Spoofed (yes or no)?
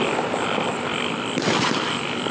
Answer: no